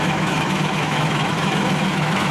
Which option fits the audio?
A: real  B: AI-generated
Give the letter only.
B